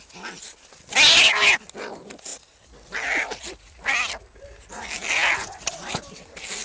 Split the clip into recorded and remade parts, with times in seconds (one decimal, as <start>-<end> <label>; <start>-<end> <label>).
0.0-5.4 recorded; 5.4-5.9 remade; 5.9-6.6 recorded